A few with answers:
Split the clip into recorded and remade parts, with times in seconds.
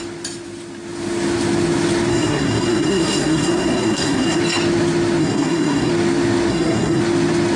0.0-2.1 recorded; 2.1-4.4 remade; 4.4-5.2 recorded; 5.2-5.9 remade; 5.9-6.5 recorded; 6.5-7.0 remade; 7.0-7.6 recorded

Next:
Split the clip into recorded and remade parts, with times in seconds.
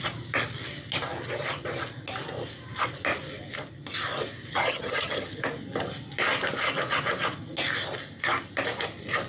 0.0-4.5 recorded; 4.5-5.4 remade; 5.4-9.3 recorded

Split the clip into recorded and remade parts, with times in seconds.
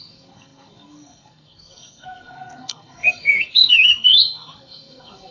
0.0-5.3 remade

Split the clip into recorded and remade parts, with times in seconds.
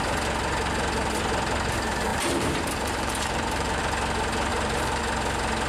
0.0-2.1 recorded; 2.1-3.8 remade; 3.8-4.5 recorded; 4.5-5.0 remade; 5.0-5.7 recorded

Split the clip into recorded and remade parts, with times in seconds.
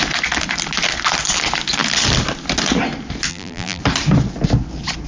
0.0-3.3 recorded; 3.3-3.8 remade; 3.8-5.1 recorded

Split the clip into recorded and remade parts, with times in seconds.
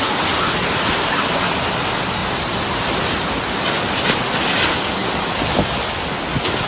0.0-6.7 recorded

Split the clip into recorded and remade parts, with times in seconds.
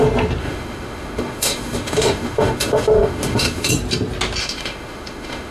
0.0-0.4 recorded; 0.4-3.7 remade; 3.7-4.4 recorded; 4.4-5.5 remade